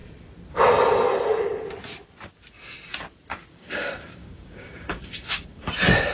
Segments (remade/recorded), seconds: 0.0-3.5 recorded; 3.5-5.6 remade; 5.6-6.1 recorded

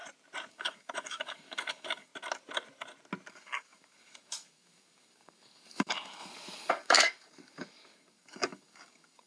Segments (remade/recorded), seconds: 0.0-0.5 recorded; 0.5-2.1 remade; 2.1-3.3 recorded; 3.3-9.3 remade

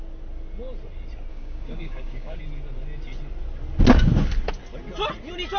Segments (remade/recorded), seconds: 0.0-1.3 recorded; 1.3-2.4 remade; 2.4-5.6 recorded

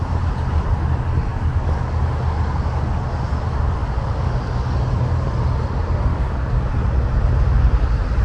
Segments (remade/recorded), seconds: 0.0-1.3 recorded; 1.3-2.0 remade; 2.0-3.8 recorded; 3.8-4.3 remade; 4.3-6.1 recorded; 6.1-6.7 remade; 6.7-8.2 recorded

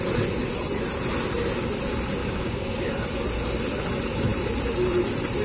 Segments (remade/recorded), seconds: 0.0-2.2 recorded; 2.2-2.9 remade; 2.9-5.4 recorded

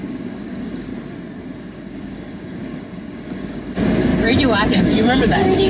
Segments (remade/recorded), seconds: 0.0-0.9 remade; 0.9-1.6 recorded; 1.6-4.1 remade; 4.1-4.7 recorded; 4.7-5.7 remade